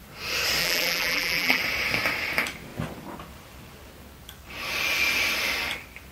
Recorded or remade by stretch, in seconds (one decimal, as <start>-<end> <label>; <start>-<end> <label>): 0.0-0.6 recorded; 0.6-1.6 remade; 1.6-6.1 recorded